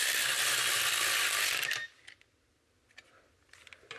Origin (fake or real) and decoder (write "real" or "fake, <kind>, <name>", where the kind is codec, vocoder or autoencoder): real